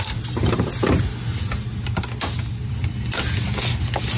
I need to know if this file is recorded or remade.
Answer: recorded